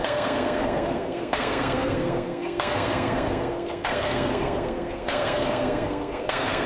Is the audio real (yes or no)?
no